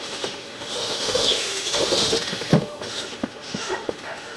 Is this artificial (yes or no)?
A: yes